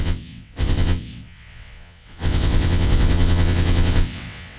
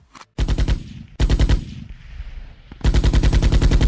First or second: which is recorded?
second